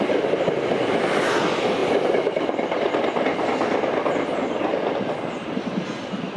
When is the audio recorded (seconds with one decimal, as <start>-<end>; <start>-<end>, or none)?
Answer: none